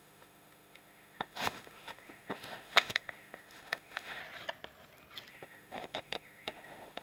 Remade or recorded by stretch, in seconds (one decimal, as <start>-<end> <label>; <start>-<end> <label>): 0.0-4.2 remade; 4.2-5.3 recorded; 5.3-7.0 remade